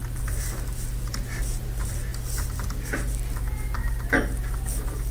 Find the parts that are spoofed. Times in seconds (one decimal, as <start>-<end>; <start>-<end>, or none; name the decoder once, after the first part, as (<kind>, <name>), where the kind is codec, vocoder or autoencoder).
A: none